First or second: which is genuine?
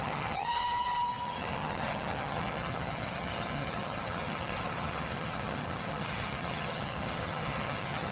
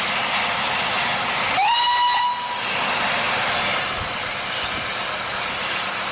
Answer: second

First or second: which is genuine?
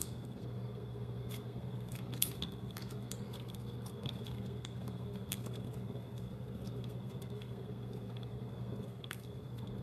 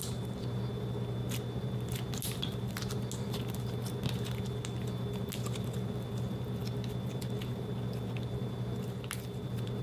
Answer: second